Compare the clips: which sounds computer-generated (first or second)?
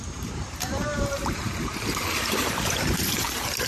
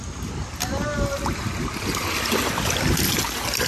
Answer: first